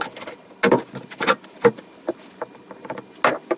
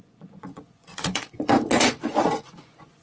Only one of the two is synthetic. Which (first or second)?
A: second